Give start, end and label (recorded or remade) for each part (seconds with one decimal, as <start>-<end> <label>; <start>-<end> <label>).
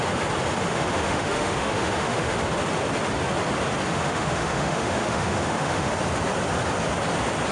0.0-0.7 recorded; 0.7-2.4 remade; 2.4-3.9 recorded; 3.9-5.9 remade; 5.9-7.5 recorded